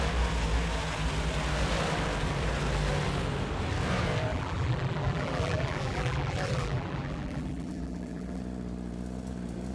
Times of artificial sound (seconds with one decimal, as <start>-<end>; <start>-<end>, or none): 4.3-8.4

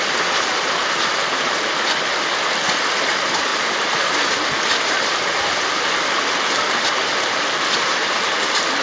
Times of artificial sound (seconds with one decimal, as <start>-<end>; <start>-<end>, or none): none

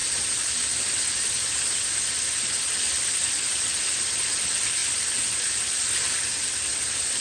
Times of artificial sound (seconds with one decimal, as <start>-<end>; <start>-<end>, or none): none

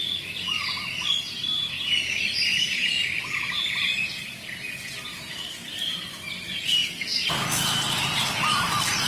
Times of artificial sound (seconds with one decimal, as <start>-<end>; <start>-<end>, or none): 2.5-3.3

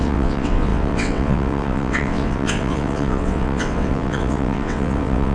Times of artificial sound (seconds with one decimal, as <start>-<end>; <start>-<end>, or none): 0.0-5.3

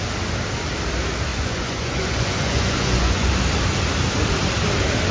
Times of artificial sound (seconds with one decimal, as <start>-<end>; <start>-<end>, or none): 1.3-3.3